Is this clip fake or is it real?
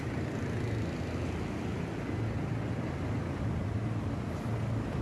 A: real